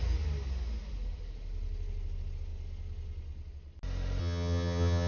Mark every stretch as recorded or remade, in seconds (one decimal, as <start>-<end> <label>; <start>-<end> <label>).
0.0-4.2 recorded; 4.2-5.1 remade